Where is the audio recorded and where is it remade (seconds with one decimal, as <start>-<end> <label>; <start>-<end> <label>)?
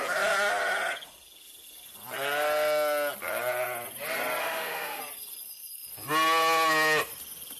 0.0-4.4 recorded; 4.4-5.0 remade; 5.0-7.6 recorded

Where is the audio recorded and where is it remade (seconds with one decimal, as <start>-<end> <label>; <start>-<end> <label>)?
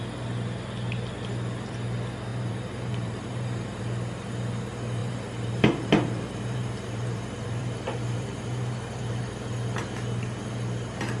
0.0-2.3 recorded; 2.3-3.8 remade; 3.8-5.0 recorded; 5.0-9.2 remade; 9.2-11.2 recorded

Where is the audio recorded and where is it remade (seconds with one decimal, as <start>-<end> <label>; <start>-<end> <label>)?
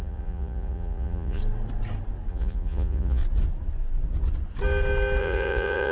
0.0-1.4 remade; 1.4-2.3 recorded; 2.3-3.2 remade; 3.2-5.2 recorded; 5.2-5.9 remade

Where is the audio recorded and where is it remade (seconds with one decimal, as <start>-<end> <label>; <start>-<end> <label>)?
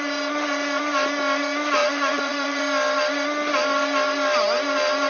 0.0-1.8 recorded; 1.8-2.6 remade; 2.6-5.1 recorded